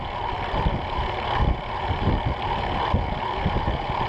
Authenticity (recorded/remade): recorded